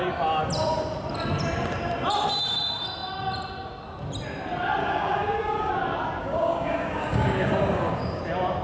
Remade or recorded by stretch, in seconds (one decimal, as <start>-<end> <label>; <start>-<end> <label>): 0.0-4.8 recorded; 4.8-5.7 remade; 5.7-6.2 recorded; 6.2-8.2 remade; 8.2-8.6 recorded